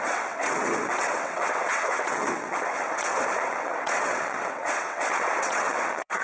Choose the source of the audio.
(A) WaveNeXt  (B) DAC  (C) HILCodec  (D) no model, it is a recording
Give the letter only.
A